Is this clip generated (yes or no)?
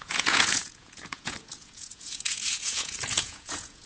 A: yes